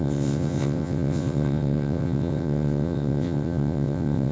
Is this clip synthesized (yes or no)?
yes